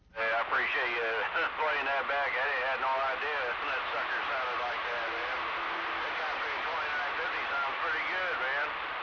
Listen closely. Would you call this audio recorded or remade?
recorded